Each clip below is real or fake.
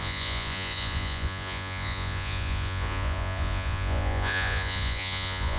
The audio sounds fake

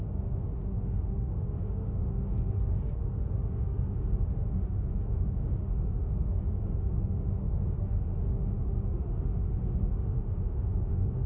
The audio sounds fake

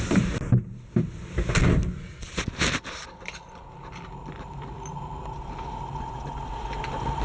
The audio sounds real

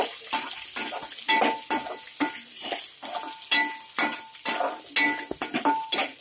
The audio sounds real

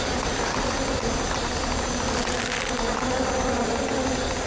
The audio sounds real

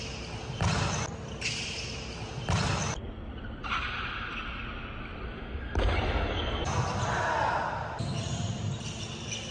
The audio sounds real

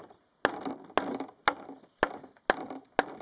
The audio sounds real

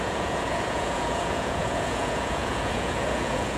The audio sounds fake